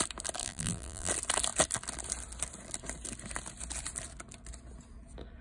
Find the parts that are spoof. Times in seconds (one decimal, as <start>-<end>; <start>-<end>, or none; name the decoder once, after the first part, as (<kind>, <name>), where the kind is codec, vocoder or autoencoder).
0.4-1.1 (vocoder, BigVGAN v2)